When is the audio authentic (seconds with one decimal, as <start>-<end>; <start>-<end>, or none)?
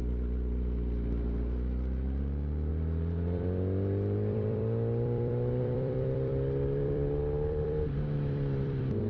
0.0-2.7